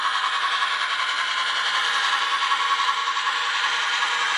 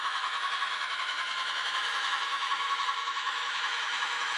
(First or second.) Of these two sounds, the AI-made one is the second